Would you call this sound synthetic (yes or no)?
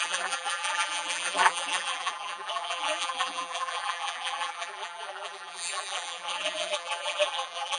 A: yes